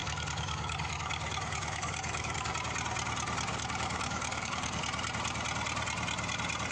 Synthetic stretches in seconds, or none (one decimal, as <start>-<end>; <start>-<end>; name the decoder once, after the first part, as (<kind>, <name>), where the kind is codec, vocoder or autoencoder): 0.0-2.5 (codec, DAC); 3.5-4.8